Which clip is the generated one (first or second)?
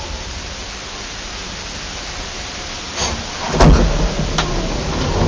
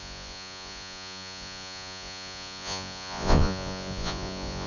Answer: second